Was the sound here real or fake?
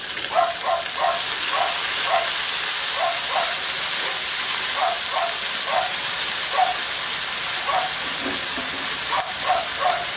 real